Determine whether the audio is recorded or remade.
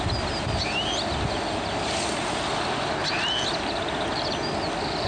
recorded